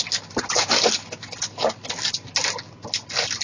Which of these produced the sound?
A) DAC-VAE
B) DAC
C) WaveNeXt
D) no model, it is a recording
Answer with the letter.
D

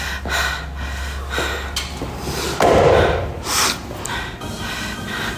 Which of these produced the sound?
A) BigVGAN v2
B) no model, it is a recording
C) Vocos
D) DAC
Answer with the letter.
B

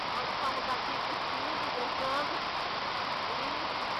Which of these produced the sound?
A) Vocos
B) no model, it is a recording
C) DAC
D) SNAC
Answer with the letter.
B